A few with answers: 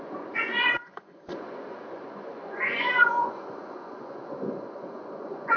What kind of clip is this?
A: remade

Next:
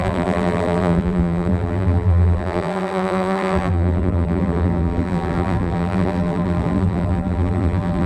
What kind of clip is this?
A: remade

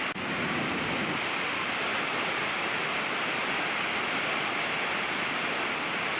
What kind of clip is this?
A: recorded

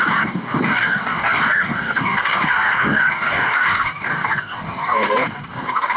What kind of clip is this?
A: remade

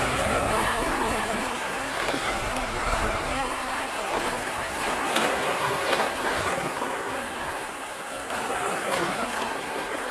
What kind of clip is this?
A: remade